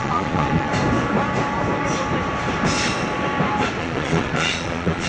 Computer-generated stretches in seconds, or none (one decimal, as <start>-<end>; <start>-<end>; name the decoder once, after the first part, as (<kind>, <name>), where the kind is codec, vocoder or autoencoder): 0.0-0.7 (vocoder, Vocos); 3.8-5.1